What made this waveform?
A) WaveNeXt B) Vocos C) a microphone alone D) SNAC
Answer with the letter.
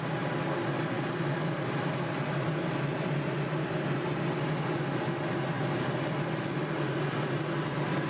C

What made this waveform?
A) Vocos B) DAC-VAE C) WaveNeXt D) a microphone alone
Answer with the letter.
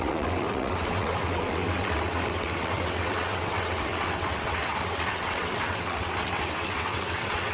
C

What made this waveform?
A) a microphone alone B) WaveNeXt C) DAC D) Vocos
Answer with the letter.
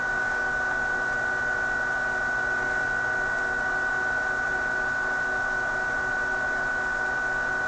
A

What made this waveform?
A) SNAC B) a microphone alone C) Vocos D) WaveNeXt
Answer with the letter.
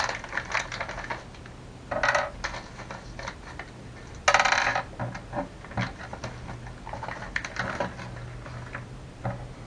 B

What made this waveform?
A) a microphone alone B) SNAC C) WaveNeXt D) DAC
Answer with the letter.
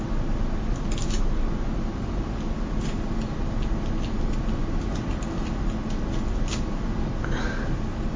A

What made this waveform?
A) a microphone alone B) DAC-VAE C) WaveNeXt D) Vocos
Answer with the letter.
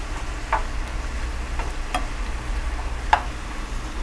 A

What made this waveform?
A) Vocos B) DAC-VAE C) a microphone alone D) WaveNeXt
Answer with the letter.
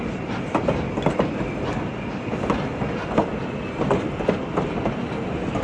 C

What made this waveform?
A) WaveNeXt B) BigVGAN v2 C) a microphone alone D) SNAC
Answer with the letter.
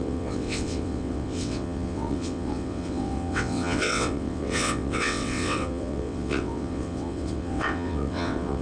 A